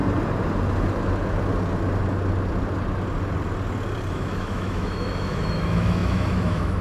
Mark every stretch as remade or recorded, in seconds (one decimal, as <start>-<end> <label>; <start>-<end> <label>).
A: 0.0-4.1 recorded; 4.1-6.8 remade